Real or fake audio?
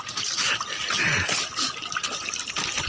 real